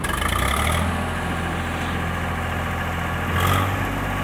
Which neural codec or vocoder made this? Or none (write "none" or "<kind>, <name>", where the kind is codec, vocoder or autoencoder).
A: none